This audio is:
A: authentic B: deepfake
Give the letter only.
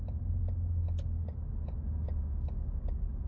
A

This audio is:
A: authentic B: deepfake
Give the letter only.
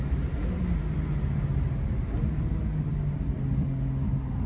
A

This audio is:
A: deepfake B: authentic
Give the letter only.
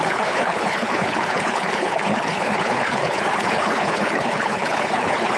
A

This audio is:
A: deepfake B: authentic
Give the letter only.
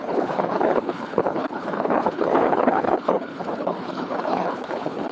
A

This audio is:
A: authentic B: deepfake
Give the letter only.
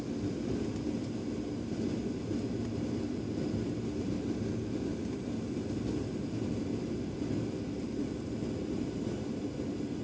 A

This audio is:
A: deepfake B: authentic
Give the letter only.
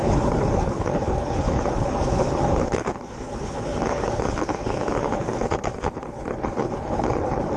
A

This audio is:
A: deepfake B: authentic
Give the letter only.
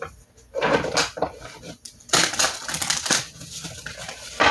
B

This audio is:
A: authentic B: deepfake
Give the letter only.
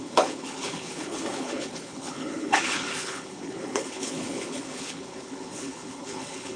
B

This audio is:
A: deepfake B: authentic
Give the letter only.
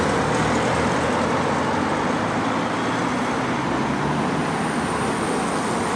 B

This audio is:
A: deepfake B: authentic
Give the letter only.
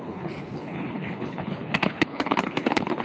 A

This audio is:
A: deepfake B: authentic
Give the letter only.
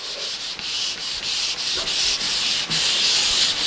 B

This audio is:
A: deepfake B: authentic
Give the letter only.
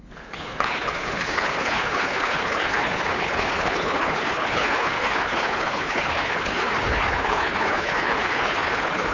A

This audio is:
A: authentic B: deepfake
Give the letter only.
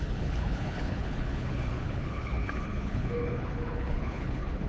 B